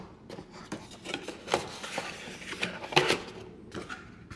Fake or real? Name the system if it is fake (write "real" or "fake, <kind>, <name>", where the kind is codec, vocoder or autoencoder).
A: real